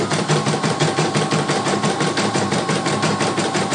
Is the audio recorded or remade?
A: remade